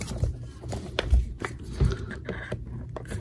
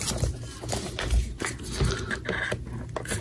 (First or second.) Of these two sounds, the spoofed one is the first